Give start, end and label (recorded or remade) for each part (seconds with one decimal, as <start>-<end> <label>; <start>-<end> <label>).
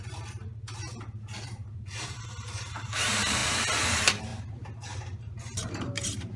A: 0.0-3.4 remade; 3.4-3.9 recorded; 3.9-6.4 remade